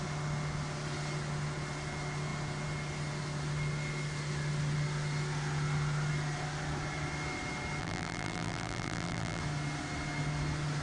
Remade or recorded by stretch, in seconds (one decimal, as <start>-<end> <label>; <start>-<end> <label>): 0.0-7.8 recorded; 7.8-9.4 remade; 9.4-10.8 recorded